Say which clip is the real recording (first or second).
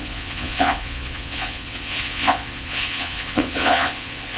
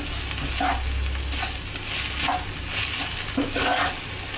second